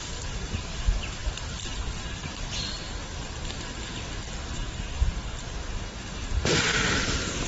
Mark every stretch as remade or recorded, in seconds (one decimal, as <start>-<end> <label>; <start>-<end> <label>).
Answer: 0.0-7.5 recorded